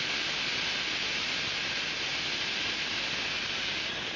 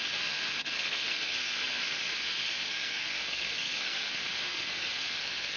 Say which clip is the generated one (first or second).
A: second